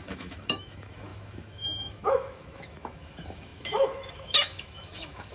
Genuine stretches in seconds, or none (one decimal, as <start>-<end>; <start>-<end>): none